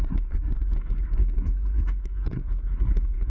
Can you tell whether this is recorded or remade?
remade